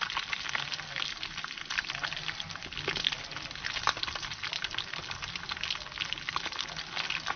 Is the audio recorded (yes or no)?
yes